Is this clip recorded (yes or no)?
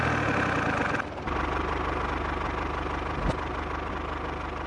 yes